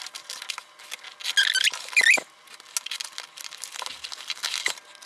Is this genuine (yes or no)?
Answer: yes